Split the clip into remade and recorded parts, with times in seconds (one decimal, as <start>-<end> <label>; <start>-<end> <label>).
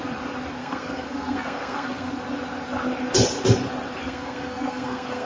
0.0-0.6 recorded; 0.6-2.1 remade; 2.1-4.0 recorded; 4.0-5.3 remade